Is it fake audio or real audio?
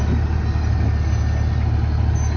real